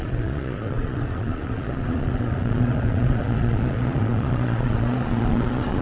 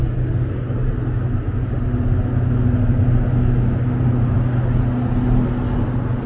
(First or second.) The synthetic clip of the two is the first